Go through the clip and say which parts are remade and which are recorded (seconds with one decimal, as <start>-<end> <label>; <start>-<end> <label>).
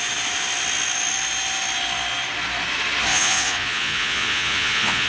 0.0-3.1 recorded; 3.1-5.1 remade